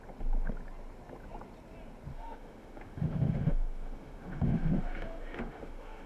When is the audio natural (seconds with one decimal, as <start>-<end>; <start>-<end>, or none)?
0.0-2.1